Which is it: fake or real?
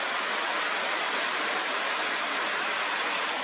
real